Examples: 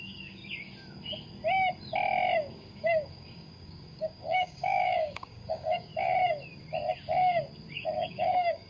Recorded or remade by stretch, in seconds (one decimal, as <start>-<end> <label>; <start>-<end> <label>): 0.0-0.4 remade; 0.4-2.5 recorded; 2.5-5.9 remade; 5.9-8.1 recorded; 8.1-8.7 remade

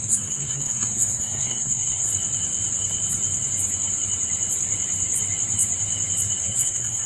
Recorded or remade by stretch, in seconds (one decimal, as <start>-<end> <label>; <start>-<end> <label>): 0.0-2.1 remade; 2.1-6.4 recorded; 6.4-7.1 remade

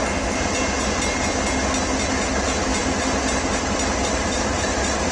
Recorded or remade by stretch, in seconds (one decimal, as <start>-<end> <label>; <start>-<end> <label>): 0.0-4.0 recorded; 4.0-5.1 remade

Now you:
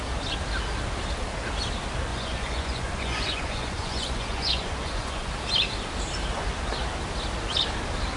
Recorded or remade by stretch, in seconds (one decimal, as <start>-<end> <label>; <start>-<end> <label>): 0.0-2.1 recorded; 2.1-5.3 remade; 5.3-8.2 recorded

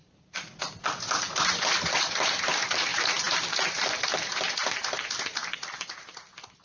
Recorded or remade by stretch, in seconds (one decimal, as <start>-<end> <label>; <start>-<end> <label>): 0.0-0.7 remade; 0.7-6.6 recorded

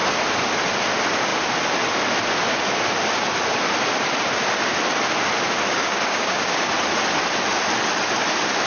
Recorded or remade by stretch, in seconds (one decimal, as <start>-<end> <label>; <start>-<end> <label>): 0.0-5.8 recorded; 5.8-6.7 remade; 6.7-8.7 recorded